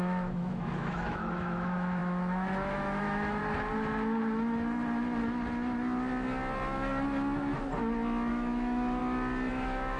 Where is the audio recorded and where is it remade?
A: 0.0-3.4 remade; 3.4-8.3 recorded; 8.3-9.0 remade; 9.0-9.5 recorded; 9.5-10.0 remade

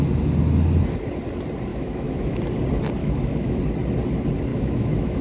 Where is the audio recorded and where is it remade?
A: 0.0-1.7 recorded; 1.7-2.4 remade; 2.4-3.0 recorded; 3.0-3.6 remade; 3.6-4.5 recorded; 4.5-5.2 remade